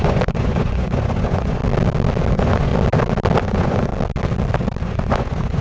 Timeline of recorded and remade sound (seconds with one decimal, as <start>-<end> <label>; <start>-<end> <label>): 0.0-1.6 remade; 1.6-2.3 recorded; 2.3-2.7 remade; 2.7-3.4 recorded; 3.4-3.9 remade; 3.9-4.8 recorded; 4.8-5.6 remade